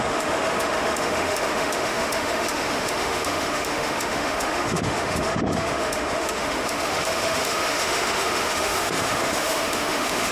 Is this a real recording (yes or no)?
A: no